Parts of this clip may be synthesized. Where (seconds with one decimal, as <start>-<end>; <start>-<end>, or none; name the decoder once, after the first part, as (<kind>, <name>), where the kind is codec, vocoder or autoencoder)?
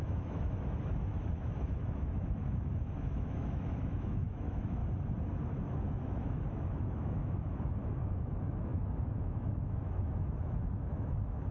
0.0-4.8 (autoencoder, DAC-VAE); 5.6-11.5